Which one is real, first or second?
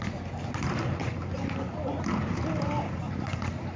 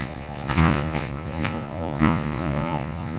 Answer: first